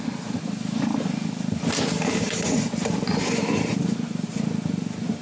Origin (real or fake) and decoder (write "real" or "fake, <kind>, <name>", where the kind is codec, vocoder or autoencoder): fake, vocoder, BigVGAN v2